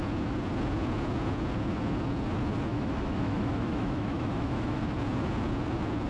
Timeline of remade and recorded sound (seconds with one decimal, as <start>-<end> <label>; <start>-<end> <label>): 0.0-2.7 recorded; 2.7-4.8 remade; 4.8-6.1 recorded